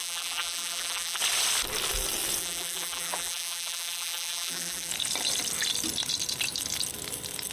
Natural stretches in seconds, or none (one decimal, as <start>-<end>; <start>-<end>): 1.2-2.4; 4.9-7.5